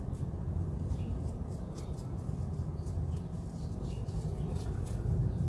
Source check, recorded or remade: recorded